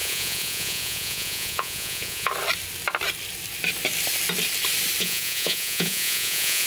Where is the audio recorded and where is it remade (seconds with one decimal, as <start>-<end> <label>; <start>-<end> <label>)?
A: 0.0-2.3 remade; 2.3-5.0 recorded; 5.0-6.7 remade